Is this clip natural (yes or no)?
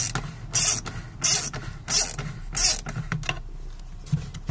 yes